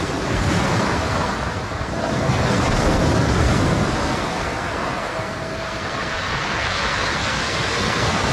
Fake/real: fake